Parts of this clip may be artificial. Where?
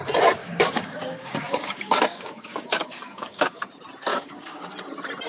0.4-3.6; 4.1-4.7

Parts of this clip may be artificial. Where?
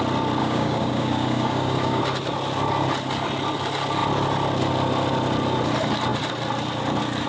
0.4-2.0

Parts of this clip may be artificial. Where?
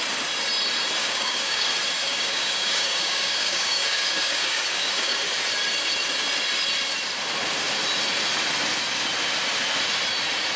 1.0-1.7; 2.1-5.2